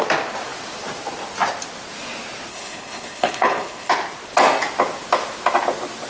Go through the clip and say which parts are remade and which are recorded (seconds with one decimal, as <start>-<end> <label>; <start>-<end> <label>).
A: 0.0-2.5 recorded; 2.5-3.9 remade; 3.9-6.1 recorded